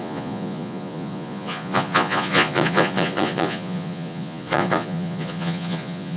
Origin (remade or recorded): remade